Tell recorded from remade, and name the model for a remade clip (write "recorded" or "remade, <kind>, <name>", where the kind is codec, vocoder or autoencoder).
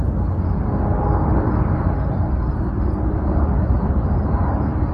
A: recorded